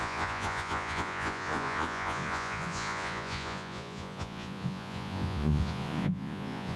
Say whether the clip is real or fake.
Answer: fake